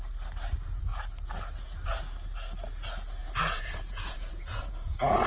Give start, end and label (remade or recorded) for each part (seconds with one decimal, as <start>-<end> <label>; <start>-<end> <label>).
0.0-3.2 recorded; 3.2-5.3 remade

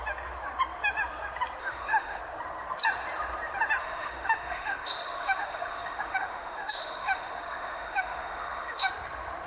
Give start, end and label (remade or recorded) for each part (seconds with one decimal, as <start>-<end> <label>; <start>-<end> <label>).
0.0-1.6 recorded; 1.6-2.2 remade; 2.2-3.8 recorded; 3.8-8.9 remade; 8.9-9.5 recorded